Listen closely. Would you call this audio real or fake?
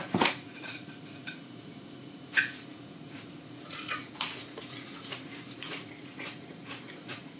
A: fake